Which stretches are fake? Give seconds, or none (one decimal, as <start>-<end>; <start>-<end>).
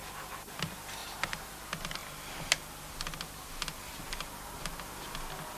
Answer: 1.0-1.5